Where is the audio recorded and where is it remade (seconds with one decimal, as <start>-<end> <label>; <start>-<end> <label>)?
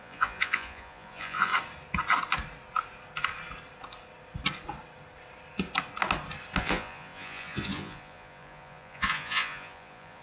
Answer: 0.0-1.5 remade; 1.5-6.6 recorded; 6.6-10.2 remade